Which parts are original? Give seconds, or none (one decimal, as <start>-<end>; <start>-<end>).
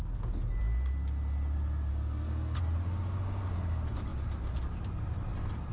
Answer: 0.0-1.9; 2.6-5.7